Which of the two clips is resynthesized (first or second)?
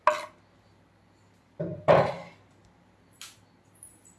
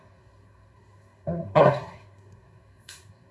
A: second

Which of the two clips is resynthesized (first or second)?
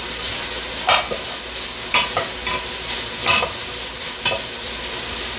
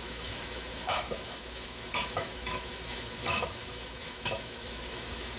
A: second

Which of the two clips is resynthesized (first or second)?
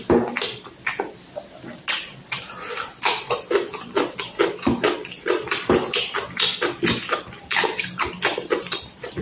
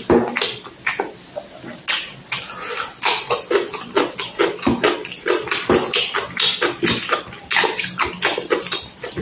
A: first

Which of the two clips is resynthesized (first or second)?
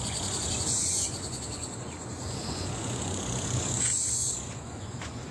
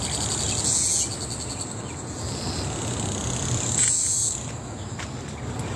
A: first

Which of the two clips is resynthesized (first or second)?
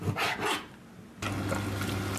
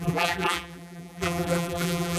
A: second